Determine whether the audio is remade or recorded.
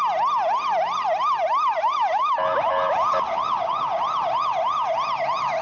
recorded